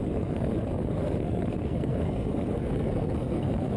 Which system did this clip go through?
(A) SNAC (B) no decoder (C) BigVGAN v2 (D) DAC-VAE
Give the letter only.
A